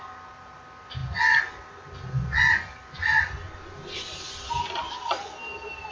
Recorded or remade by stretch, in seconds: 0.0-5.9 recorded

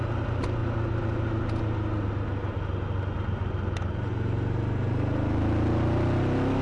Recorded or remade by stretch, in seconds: 0.0-6.6 recorded

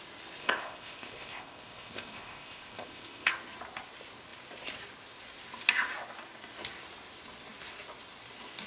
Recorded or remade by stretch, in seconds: 0.0-0.4 recorded; 0.4-3.3 remade; 3.3-8.7 recorded

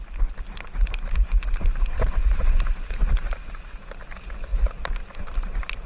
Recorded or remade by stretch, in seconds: 0.0-5.9 recorded

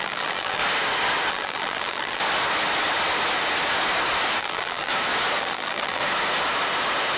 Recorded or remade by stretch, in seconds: 0.0-0.6 remade; 0.6-1.3 recorded; 1.3-2.2 remade; 2.2-4.4 recorded; 4.4-4.9 remade; 4.9-5.4 recorded; 5.4-6.0 remade; 6.0-7.2 recorded

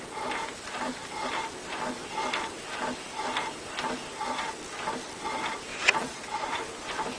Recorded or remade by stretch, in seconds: 0.0-5.7 recorded; 5.7-6.6 remade; 6.6-7.2 recorded

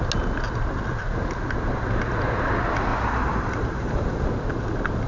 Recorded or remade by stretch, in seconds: 0.0-2.9 recorded; 2.9-4.3 remade; 4.3-5.1 recorded